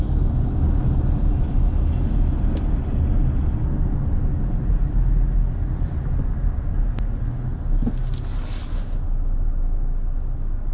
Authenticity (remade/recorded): recorded